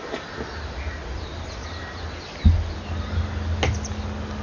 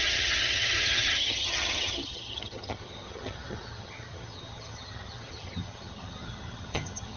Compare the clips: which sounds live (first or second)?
first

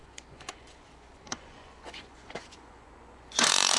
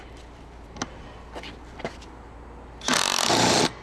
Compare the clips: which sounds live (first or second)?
second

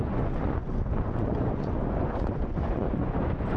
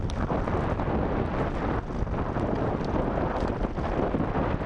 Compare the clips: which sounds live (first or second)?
second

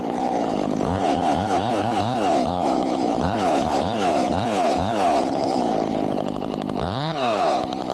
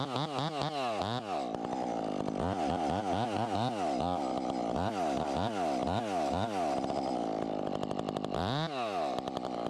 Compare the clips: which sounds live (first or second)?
second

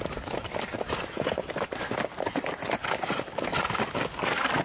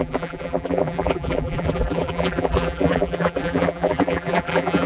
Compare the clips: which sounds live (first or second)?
first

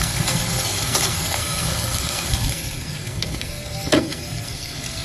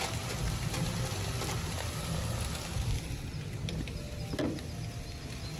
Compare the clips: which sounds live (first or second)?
second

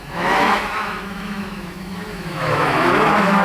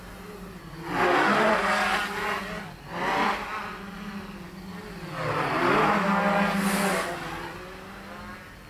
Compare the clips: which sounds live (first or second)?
second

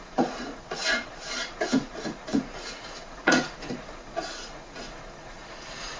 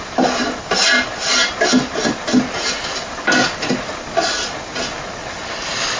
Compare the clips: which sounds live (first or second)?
second